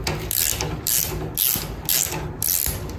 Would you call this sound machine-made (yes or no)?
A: no